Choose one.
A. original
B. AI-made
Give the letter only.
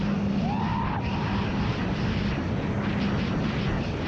A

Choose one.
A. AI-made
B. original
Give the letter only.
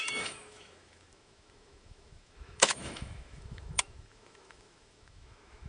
A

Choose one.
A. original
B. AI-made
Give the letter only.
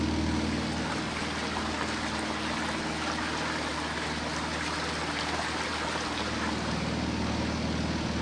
A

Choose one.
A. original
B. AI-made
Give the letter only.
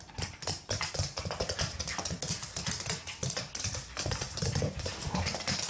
A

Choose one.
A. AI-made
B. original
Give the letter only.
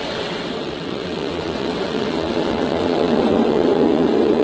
A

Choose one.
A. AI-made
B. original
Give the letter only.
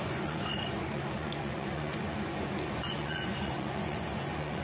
A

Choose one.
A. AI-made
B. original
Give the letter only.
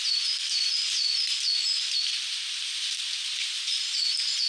B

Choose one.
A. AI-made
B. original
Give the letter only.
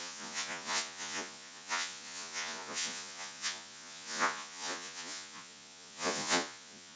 A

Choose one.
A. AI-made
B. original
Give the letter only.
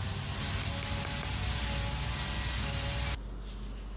B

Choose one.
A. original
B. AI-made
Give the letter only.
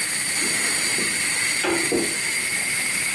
B